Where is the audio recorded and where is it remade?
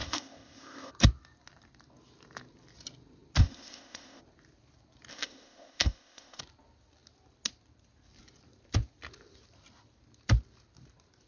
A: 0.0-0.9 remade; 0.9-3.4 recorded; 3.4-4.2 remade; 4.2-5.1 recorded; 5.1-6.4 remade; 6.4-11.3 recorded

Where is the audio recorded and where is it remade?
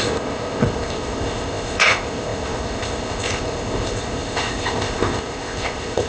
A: 0.0-6.1 remade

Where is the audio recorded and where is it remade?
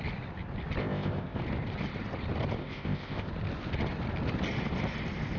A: 0.0-0.8 recorded; 0.8-1.4 remade; 1.4-2.6 recorded; 2.6-3.3 remade; 3.3-5.4 recorded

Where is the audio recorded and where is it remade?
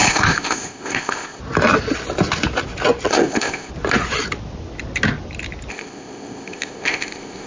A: 0.0-1.4 remade; 1.4-3.1 recorded; 3.1-3.7 remade; 3.7-5.7 recorded; 5.7-7.5 remade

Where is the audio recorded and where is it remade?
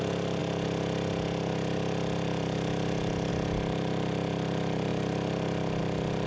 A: 0.0-6.3 recorded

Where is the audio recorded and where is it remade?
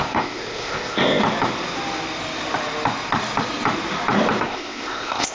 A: 0.0-1.2 remade; 1.2-4.4 recorded; 4.4-5.3 remade